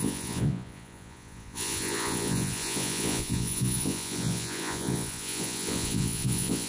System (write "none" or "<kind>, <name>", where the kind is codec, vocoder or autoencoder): vocoder, Vocos